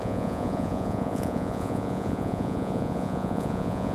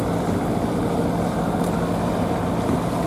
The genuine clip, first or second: second